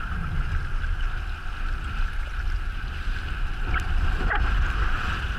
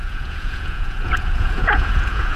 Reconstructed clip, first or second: second